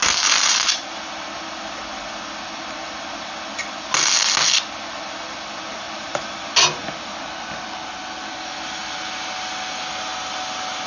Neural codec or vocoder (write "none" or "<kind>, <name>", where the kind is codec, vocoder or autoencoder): none